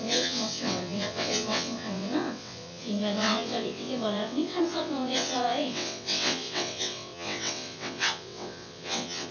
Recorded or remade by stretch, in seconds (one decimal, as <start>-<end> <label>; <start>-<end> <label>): 0.0-9.3 remade